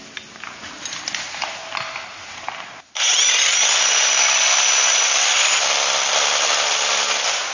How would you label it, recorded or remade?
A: recorded